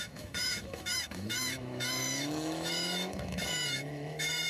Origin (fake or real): fake